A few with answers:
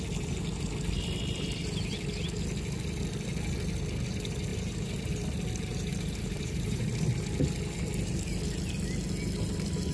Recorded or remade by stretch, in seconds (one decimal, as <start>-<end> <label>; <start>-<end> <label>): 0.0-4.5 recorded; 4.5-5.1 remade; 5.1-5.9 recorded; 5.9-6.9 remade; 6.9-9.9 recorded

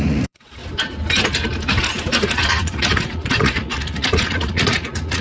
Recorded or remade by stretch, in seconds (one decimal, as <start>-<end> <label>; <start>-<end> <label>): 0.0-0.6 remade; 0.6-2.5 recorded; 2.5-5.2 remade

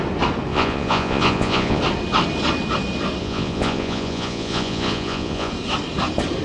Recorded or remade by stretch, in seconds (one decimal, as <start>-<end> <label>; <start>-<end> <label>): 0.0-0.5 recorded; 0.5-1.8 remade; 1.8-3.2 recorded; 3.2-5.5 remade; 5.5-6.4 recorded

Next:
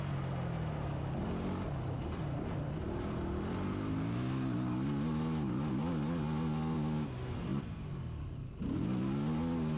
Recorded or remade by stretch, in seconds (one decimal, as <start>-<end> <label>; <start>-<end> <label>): 0.0-9.8 recorded

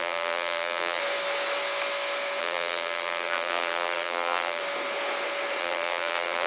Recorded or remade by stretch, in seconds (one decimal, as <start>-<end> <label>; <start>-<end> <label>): 0.0-1.0 remade; 1.0-2.4 recorded; 2.4-4.6 remade; 4.6-5.6 recorded; 5.6-6.5 remade

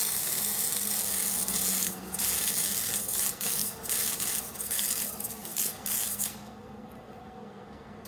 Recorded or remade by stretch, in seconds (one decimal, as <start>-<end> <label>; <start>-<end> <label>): 0.0-8.1 remade

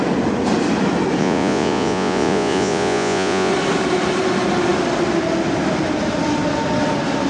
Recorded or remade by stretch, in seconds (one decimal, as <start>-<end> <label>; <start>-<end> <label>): 0.0-1.2 recorded; 1.2-3.5 remade; 3.5-7.3 recorded

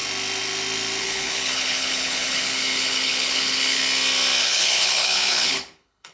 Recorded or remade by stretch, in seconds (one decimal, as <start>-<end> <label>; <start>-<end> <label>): 0.0-1.0 recorded; 1.0-3.8 remade; 3.8-4.4 recorded; 4.4-6.1 remade